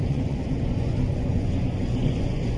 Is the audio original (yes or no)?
no